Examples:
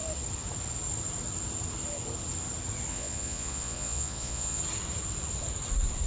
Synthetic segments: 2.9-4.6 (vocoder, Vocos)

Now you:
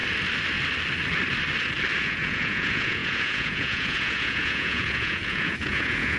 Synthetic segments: 2.0-6.2 (vocoder, Vocos)

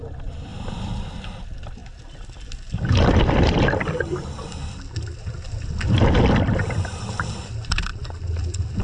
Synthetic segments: 0.5-1.2 (vocoder, BigVGAN v2); 7.9-8.8

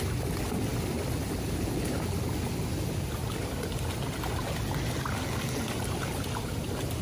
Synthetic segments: none

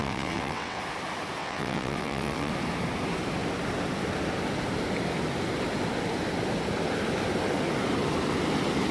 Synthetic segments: 0.0-0.8 (vocoder, WaveNeXt); 1.4-2.5

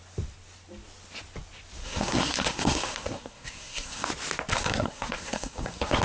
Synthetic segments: 1.8-4.1 (codec, SNAC); 4.5-6.0